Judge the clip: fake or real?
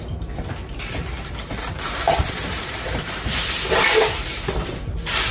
fake